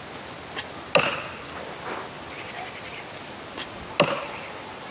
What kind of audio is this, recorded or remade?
recorded